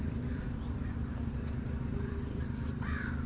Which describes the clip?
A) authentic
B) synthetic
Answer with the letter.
B